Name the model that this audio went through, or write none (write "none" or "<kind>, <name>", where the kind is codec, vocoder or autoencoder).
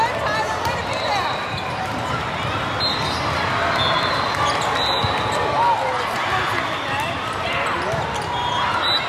none